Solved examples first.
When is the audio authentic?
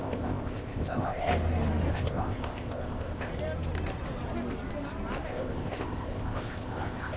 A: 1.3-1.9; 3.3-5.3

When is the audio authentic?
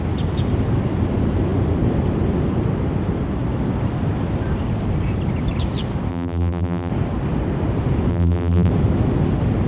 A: 0.0-6.1; 6.9-8.1; 8.7-9.7